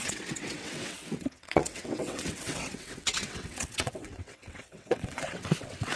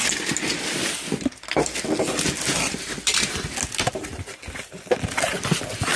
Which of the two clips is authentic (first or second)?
second